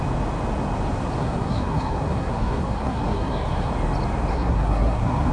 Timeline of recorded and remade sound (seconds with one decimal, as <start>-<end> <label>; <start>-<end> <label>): 0.0-1.2 recorded; 1.2-3.7 remade; 3.7-4.3 recorded; 4.3-5.3 remade